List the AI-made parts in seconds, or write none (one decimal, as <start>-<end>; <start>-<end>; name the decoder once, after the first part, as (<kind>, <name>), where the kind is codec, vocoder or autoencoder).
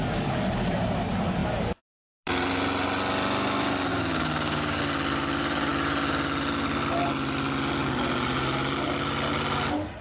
3.9-4.8 (codec, DAC)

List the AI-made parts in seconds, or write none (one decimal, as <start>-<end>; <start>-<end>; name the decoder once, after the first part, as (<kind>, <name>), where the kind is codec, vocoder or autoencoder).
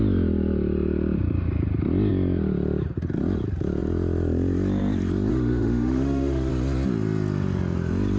5.3-6.5 (autoencoder, DAC-VAE)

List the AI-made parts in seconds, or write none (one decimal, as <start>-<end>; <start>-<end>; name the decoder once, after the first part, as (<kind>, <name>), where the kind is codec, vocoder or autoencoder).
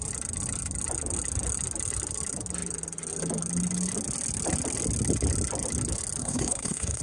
6.2-7.0 (codec, SNAC)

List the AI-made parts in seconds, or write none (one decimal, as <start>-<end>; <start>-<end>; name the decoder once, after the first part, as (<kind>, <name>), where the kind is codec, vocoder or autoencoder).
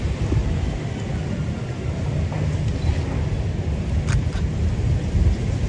none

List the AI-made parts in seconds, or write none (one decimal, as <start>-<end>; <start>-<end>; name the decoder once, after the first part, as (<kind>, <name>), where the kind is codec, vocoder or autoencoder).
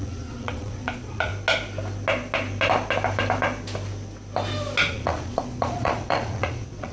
0.0-1.3 (vocoder, Vocos); 4.9-6.9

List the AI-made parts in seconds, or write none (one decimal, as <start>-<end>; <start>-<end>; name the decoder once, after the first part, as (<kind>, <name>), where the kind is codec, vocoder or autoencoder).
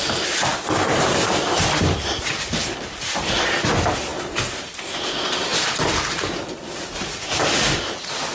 0.0-4.1 (vocoder, BigVGAN v2); 4.6-8.3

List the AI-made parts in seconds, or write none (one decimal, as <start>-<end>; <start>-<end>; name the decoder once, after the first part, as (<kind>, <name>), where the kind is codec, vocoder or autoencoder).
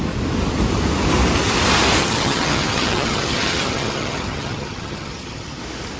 2.0-5.6 (vocoder, HiFi-GAN)